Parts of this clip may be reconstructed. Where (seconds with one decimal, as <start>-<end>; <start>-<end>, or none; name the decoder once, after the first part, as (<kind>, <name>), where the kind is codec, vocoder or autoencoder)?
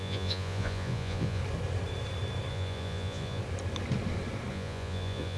0.0-1.4 (vocoder, Vocos); 2.5-3.4; 4.5-5.4